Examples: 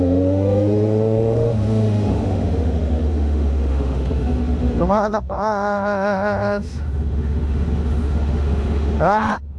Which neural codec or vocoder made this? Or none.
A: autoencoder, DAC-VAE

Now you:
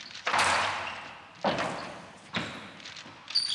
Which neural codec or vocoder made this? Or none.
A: none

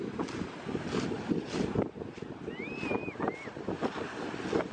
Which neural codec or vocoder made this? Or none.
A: none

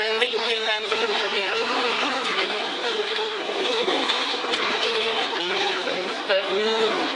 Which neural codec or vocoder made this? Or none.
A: codec, SNAC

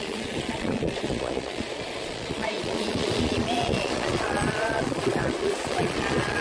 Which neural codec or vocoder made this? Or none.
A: vocoder, Vocos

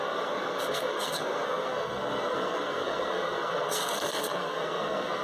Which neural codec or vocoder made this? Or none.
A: codec, SNAC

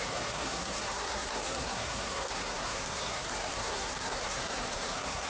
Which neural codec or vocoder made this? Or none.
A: codec, SNAC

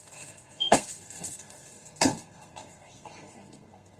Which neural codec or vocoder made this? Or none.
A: codec, SNAC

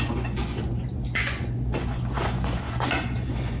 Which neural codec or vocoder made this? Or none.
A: vocoder, Vocos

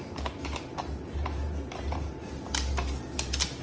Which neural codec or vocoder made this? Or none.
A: none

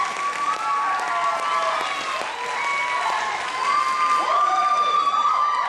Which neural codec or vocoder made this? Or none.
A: none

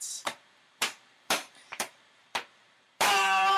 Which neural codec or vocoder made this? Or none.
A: vocoder, BigVGAN v2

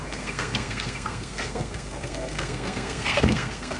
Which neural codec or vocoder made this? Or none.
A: codec, SNAC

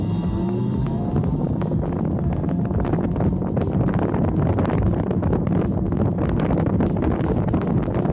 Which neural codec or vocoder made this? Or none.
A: none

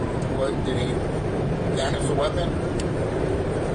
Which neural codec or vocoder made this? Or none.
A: vocoder, BigVGAN v2